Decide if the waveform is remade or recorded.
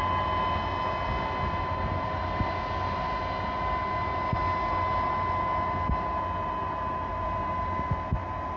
recorded